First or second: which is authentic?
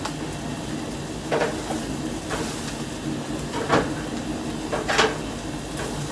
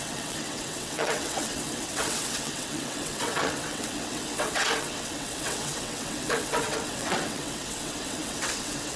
first